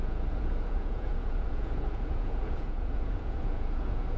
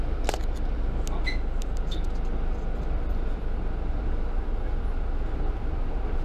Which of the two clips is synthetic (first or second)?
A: first